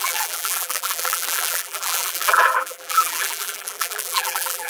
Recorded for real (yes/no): no